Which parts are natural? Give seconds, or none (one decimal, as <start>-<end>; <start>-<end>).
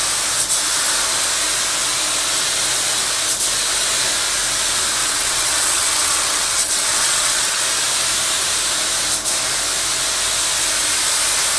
0.0-5.0; 7.6-11.6